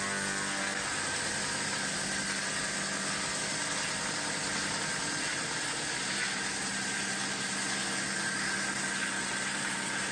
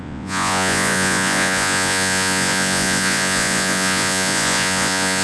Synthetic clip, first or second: second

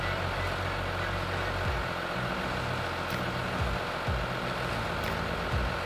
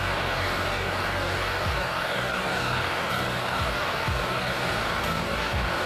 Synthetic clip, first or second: second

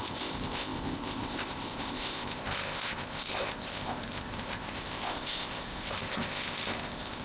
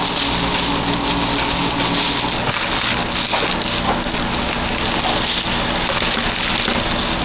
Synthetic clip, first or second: first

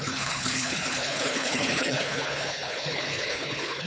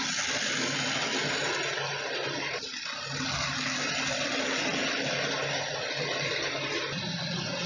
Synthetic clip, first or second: first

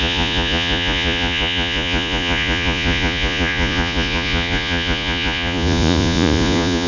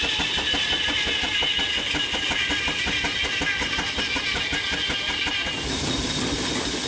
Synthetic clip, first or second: first